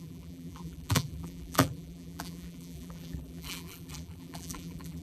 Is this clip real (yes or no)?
no